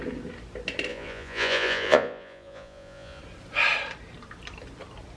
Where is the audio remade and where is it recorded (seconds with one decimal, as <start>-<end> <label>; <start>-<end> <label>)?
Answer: 0.0-0.9 recorded; 0.9-3.2 remade; 3.2-5.2 recorded